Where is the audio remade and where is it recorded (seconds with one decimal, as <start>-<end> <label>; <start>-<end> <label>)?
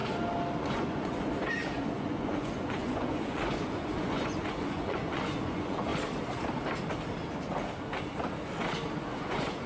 0.0-0.6 recorded; 0.6-5.9 remade; 5.9-9.0 recorded; 9.0-9.7 remade